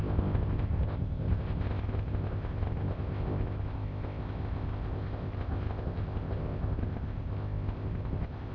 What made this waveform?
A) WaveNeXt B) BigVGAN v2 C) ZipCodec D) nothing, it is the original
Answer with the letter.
C